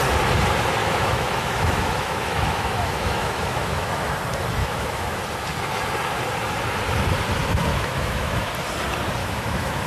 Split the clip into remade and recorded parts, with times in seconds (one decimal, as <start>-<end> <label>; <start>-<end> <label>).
0.0-0.8 recorded; 0.8-4.1 remade; 4.1-4.6 recorded; 4.6-5.2 remade; 5.2-7.7 recorded; 7.7-8.5 remade; 8.5-9.2 recorded; 9.2-9.9 remade